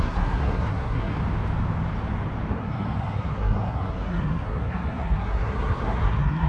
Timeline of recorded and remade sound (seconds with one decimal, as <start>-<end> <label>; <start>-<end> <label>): 0.0-1.2 remade; 1.2-2.5 recorded; 2.5-6.5 remade